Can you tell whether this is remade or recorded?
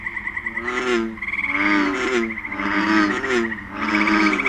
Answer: recorded